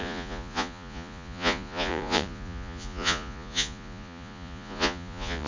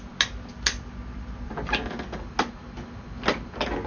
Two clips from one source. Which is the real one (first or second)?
second